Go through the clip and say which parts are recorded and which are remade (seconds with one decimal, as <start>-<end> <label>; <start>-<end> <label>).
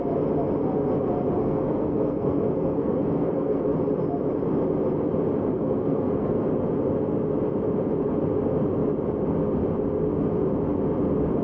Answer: 0.0-1.4 recorded; 1.4-3.6 remade; 3.6-5.5 recorded; 5.5-6.5 remade; 6.5-11.4 recorded